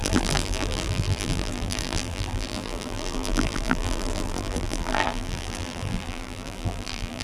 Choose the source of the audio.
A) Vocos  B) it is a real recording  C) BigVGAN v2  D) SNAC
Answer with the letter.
C